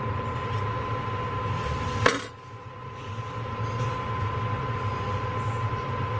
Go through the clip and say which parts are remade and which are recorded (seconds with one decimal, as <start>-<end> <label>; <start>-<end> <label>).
0.0-6.2 recorded